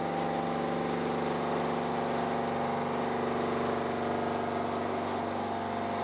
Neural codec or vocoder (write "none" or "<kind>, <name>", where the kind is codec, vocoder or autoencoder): none